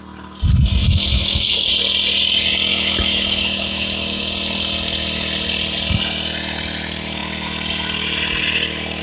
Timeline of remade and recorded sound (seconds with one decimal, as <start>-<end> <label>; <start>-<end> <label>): 0.0-0.8 recorded; 0.8-1.7 remade; 1.7-2.7 recorded; 2.7-4.2 remade; 4.2-9.0 recorded